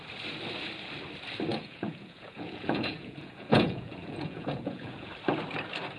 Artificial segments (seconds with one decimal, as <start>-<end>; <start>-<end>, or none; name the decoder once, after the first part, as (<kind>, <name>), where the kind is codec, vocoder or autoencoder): 1.5-5.1 (vocoder, Vocos)